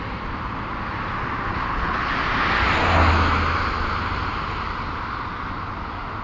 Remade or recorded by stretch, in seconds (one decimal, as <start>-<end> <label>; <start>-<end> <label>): 0.0-1.5 recorded; 1.5-2.1 remade; 2.1-6.2 recorded